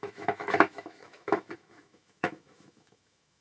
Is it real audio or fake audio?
fake